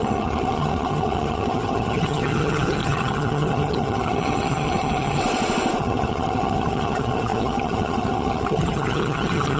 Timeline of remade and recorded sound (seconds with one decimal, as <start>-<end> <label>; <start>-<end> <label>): 0.0-5.2 remade; 5.2-5.8 recorded; 5.8-9.6 remade